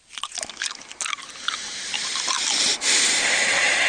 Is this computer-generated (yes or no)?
no